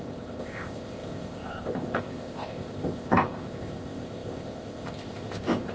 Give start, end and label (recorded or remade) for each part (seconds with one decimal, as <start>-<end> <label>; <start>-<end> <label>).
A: 0.0-5.7 remade